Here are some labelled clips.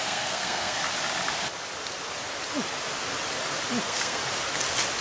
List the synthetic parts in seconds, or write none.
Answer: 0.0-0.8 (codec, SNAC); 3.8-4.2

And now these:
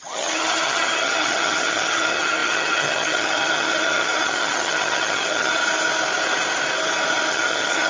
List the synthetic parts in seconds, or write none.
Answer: 0.0-5.6 (vocoder, HiFi-GAN); 7.3-7.9

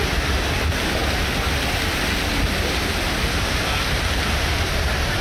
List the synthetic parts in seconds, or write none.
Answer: none

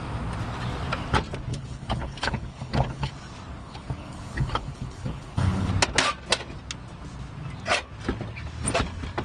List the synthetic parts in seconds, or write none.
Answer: 1.5-3.1 (codec, HILCodec); 3.6-5.7

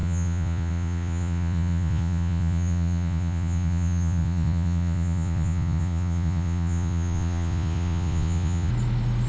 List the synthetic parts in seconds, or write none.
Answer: 0.0-8.7 (vocoder, Vocos)

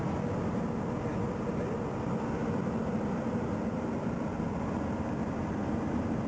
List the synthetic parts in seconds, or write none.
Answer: none